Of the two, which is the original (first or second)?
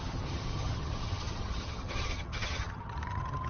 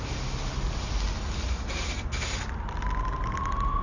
second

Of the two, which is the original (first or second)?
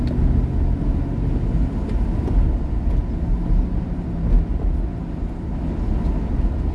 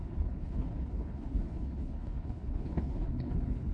first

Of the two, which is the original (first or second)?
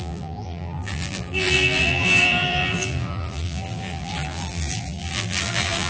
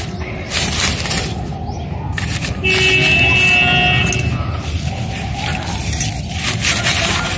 second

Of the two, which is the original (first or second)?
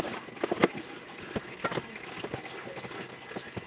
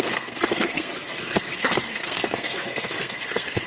first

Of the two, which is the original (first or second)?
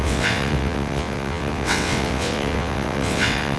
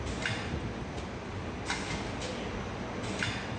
second